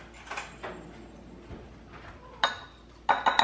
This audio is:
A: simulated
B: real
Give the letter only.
B